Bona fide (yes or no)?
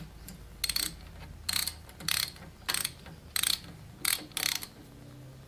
yes